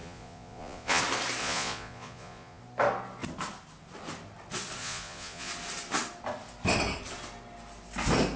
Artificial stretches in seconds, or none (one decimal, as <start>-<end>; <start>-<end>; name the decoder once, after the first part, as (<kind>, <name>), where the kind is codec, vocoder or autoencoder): 0.0-1.0 (vocoder, Vocos); 1.4-2.6; 4.8-5.5